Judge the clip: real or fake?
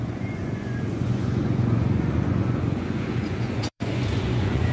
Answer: fake